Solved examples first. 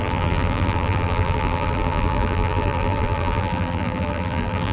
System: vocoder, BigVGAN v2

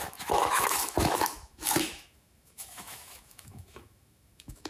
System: autoencoder, DAC-VAE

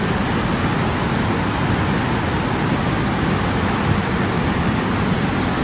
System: none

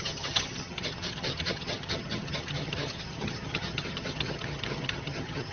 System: vocoder, HiFi-GAN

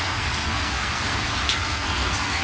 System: codec, SNAC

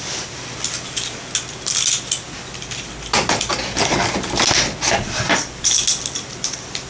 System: none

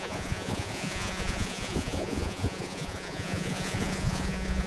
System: vocoder, Vocos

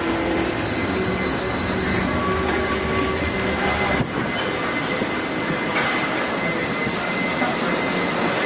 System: none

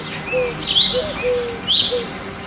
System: none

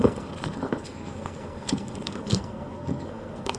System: codec, SNAC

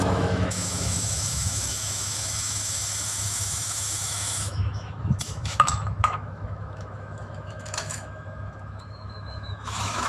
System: autoencoder, DAC-VAE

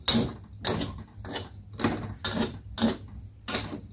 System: none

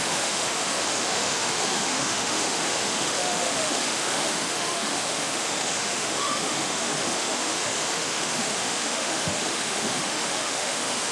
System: autoencoder, DAC-VAE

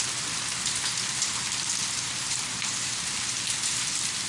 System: none